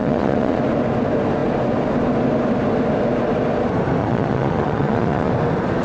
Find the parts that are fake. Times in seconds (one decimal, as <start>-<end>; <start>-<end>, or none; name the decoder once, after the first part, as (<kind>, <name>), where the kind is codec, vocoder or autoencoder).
0.0-0.6 (vocoder, Vocos); 4.0-5.3